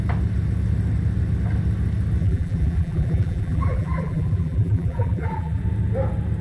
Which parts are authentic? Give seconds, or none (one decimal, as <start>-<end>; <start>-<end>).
0.0-2.2; 5.6-6.4